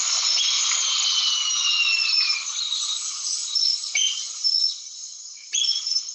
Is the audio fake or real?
real